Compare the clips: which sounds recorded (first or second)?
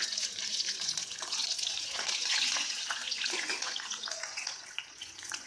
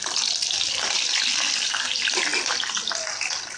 second